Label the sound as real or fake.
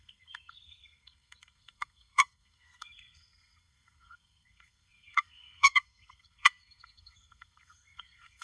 fake